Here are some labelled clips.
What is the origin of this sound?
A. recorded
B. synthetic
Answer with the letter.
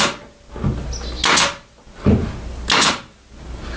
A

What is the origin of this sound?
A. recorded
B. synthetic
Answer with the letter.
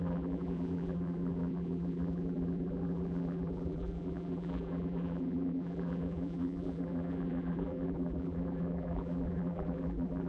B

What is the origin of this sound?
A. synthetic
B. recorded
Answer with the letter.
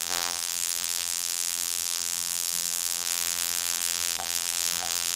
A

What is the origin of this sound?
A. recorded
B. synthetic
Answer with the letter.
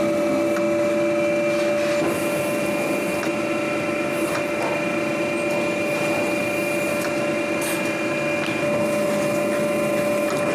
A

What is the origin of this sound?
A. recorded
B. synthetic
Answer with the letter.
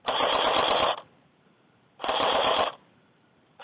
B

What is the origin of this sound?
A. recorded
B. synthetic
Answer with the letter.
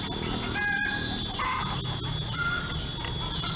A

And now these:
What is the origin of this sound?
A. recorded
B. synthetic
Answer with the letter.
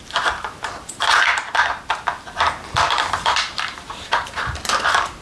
B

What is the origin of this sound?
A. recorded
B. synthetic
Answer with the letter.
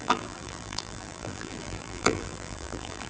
B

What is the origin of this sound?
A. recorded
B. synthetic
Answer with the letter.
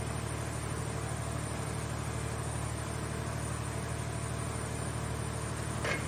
A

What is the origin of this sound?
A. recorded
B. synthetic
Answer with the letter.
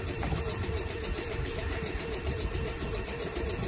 B